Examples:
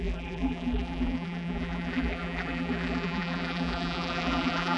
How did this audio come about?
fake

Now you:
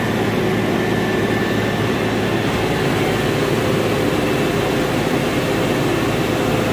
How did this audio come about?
real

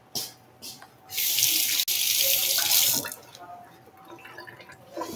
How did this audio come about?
real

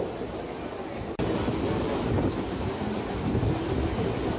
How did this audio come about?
real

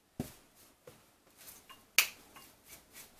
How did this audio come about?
real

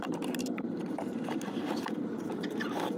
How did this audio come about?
fake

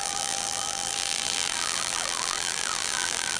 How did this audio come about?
fake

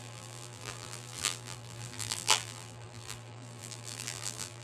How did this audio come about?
fake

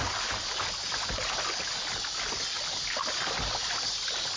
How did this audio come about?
real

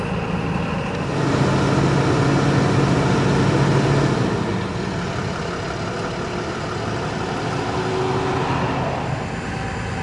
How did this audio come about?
real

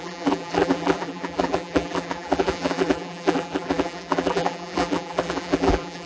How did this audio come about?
fake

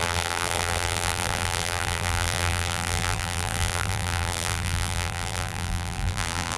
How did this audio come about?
fake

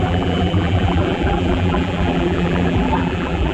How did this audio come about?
fake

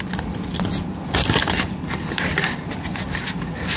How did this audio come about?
real